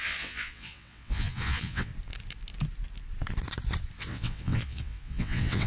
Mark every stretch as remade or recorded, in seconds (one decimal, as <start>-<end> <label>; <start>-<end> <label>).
0.0-1.9 remade; 1.9-4.0 recorded; 4.0-5.7 remade